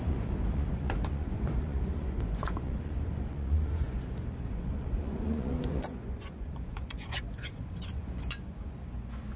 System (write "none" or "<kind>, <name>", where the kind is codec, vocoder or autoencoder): vocoder, Vocos